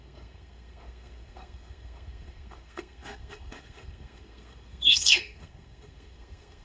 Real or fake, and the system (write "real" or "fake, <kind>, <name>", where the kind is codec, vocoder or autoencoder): fake, codec, SNAC